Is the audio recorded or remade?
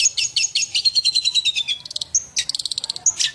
recorded